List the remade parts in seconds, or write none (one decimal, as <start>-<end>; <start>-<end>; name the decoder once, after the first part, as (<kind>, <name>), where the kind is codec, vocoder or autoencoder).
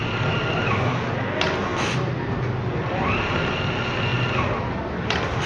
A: none